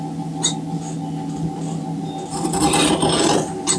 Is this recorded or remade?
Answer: recorded